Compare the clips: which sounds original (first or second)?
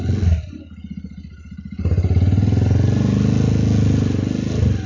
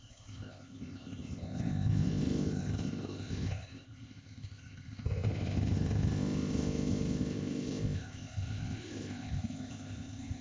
first